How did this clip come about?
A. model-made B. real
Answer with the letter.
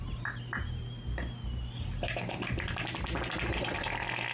B